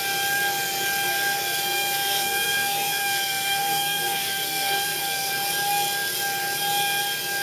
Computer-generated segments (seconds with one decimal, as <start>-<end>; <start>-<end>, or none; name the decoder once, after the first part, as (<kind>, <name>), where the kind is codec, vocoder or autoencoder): 1.1-5.3 (codec, SNAC)

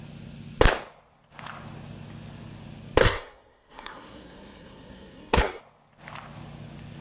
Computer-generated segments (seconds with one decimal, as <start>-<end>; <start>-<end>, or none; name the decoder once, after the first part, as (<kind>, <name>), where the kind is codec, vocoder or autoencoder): 3.0-5.6 (codec, SNAC)

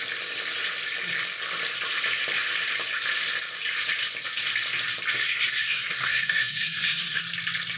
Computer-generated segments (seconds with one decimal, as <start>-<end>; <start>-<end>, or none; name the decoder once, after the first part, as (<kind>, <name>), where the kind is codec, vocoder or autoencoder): 5.1-7.2 (codec, SNAC)